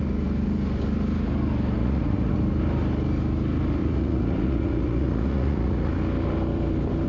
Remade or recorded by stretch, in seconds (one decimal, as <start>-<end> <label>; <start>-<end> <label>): 0.0-1.8 recorded; 1.8-2.4 remade; 2.4-3.8 recorded; 3.8-5.9 remade; 5.9-7.1 recorded